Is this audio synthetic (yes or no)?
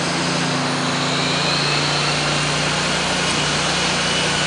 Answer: no